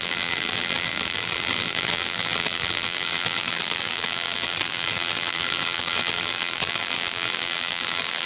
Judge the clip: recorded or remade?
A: remade